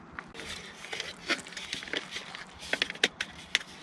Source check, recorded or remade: recorded